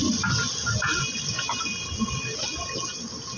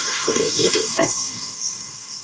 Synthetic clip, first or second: second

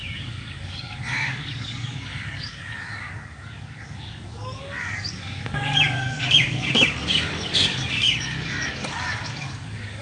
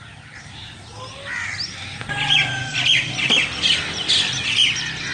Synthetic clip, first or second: first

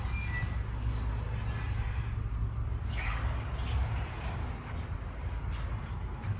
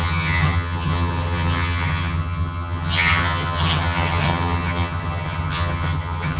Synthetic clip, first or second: second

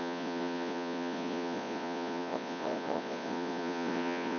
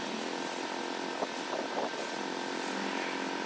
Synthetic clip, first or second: first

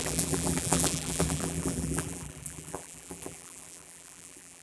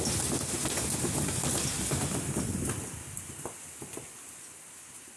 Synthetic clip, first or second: first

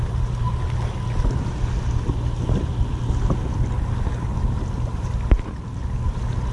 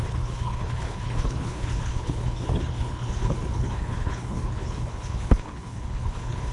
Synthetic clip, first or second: second